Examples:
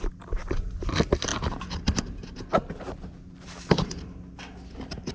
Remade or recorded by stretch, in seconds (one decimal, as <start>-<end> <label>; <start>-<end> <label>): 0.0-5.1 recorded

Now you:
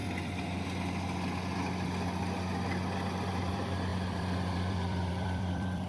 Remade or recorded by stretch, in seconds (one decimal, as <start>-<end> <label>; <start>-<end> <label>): 0.0-3.5 recorded; 3.5-5.9 remade

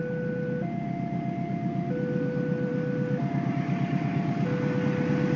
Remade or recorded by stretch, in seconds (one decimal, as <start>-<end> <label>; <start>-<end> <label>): 0.0-5.4 recorded

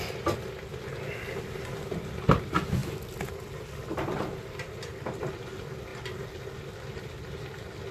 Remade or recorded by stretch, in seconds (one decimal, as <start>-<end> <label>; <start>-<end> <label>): 0.0-7.9 recorded

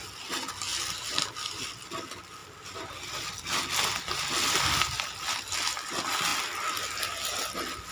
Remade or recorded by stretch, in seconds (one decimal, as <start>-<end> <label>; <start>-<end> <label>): 0.0-0.7 recorded; 0.7-2.0 remade; 2.0-2.4 recorded; 2.4-3.6 remade; 3.6-7.9 recorded